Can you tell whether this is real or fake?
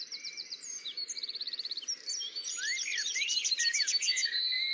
fake